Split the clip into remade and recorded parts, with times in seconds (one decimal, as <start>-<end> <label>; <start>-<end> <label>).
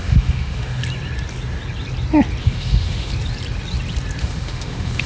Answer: 0.0-0.8 remade; 0.8-2.4 recorded; 2.4-3.1 remade; 3.1-4.2 recorded; 4.2-5.1 remade